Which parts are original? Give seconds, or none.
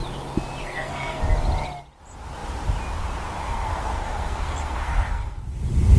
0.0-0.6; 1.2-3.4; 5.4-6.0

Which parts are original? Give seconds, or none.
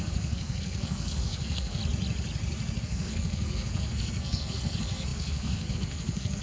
1.8-2.8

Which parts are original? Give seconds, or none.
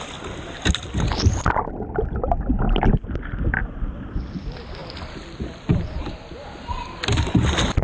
0.0-7.8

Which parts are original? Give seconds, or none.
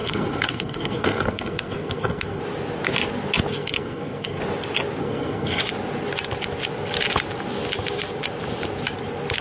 2.4-3.5; 4.4-5.0; 5.6-9.4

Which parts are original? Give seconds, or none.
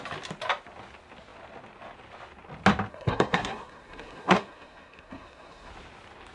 0.0-2.9; 5.7-6.3